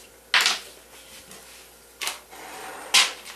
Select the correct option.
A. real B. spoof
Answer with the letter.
A